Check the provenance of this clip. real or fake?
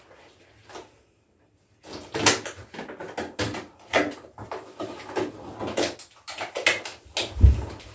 real